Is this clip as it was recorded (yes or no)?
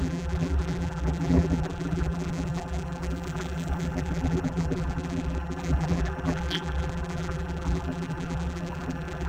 no